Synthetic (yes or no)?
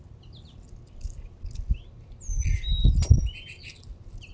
no